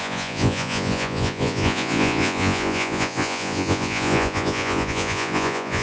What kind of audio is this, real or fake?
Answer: fake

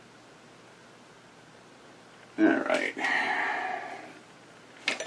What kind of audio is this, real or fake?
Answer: real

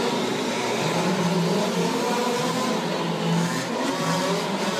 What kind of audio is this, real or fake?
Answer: real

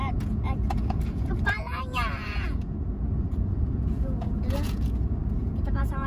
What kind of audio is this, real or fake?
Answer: fake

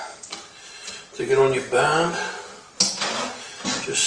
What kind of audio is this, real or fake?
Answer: real